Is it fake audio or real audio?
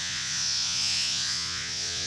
fake